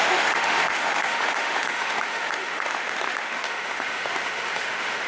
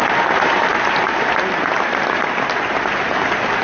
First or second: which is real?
second